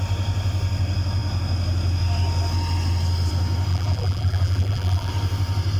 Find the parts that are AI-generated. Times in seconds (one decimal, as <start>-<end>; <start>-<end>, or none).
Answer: 3.7-5.1